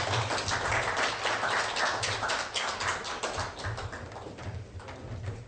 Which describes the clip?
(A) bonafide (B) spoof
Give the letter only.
A